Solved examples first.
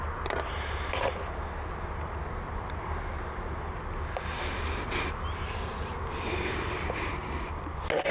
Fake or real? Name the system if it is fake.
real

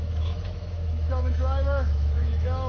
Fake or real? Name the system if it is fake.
fake, autoencoder, DAC-VAE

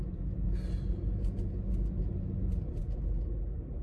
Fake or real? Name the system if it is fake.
real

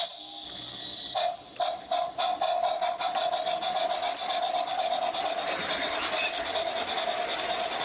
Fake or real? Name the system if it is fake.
real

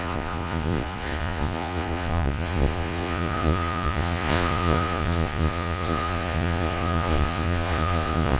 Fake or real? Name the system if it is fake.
fake, vocoder, Vocos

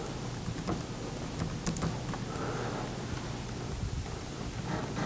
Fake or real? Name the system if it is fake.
real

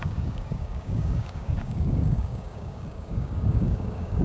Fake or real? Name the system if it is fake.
fake, codec, DAC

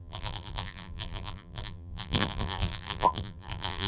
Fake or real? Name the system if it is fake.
fake, vocoder, BigVGAN v2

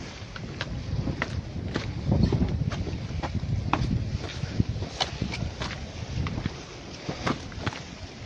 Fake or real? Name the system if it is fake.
real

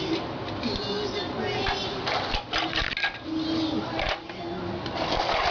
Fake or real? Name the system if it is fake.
real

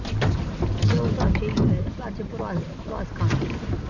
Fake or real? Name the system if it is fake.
real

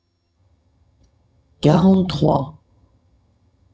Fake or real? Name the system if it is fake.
fake, vocoder, HiFi-GAN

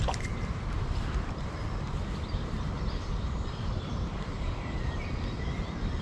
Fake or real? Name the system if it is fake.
fake, vocoder, BigVGAN v2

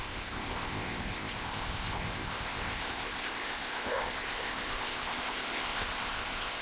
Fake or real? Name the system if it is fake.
fake, codec, ZipCodec